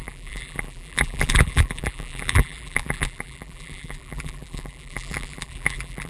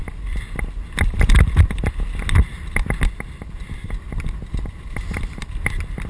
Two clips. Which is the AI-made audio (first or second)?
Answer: first